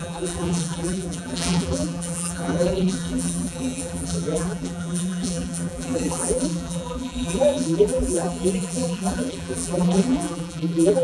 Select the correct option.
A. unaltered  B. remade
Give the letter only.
B